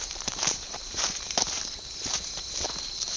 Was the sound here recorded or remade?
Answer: remade